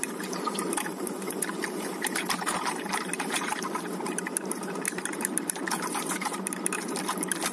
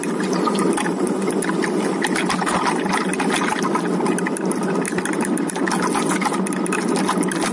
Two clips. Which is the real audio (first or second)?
second